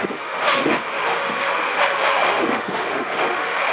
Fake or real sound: fake